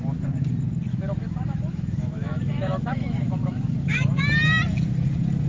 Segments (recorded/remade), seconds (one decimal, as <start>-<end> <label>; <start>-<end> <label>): 0.0-0.9 recorded; 0.9-4.2 remade; 4.2-5.5 recorded